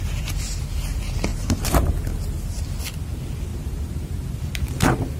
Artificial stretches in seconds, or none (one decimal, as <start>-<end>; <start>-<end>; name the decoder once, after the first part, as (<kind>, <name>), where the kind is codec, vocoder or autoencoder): 1.3-2.2 (vocoder, BigVGAN v2); 3.5-4.7